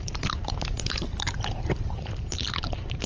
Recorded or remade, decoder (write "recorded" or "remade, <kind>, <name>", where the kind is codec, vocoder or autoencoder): remade, vocoder, BigVGAN v2